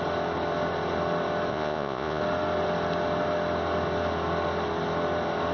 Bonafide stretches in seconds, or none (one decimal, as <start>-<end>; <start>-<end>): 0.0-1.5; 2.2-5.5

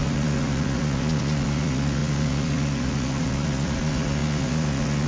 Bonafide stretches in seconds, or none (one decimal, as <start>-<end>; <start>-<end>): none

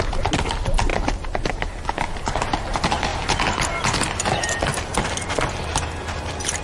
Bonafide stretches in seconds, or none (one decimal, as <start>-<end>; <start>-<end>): 0.0-6.6

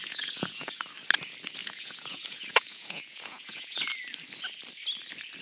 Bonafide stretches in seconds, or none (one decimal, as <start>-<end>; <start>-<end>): 0.8-1.6; 3.9-5.4

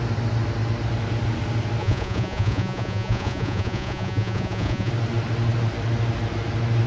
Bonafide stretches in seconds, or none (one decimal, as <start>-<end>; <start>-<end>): 0.0-1.8; 4.9-6.9